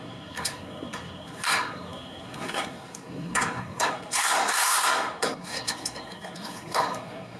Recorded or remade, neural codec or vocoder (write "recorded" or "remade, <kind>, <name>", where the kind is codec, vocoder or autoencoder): remade, codec, SNAC